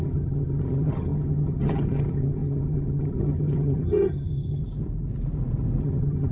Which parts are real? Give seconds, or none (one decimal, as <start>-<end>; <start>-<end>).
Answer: 4.6-5.8